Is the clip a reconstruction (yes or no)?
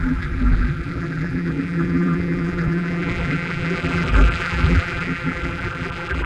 yes